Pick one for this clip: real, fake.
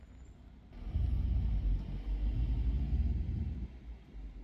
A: real